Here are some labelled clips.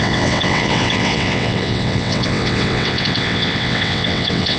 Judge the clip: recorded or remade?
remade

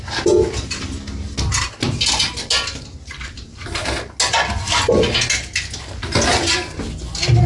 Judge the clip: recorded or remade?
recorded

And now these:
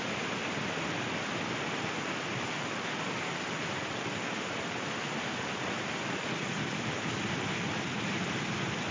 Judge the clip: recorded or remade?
recorded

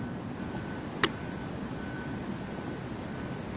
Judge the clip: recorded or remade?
recorded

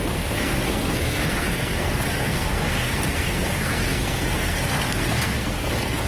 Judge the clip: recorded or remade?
remade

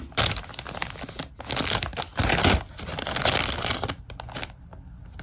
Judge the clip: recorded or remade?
recorded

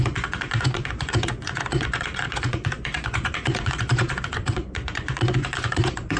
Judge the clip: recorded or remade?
remade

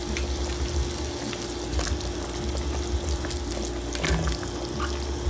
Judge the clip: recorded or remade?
recorded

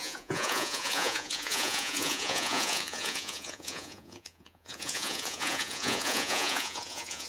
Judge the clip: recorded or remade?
remade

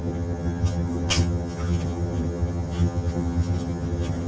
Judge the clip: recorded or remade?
remade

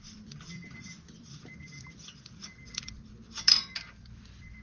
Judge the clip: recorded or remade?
remade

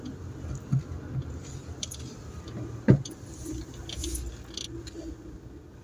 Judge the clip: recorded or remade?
recorded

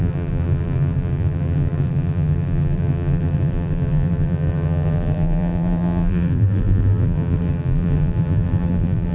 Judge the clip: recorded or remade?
remade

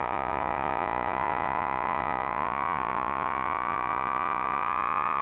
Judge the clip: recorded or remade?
remade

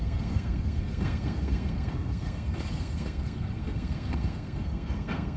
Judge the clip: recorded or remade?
remade